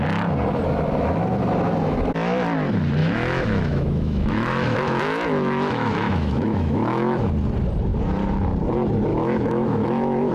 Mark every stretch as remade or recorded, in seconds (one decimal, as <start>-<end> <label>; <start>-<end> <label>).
0.0-3.0 recorded; 3.0-7.3 remade; 7.3-9.1 recorded; 9.1-10.3 remade